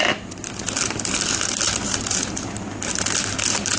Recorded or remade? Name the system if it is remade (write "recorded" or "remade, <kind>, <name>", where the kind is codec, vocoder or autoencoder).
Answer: recorded